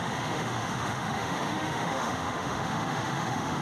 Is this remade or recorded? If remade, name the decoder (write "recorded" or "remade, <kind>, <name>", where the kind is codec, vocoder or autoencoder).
remade, autoencoder, DAC-VAE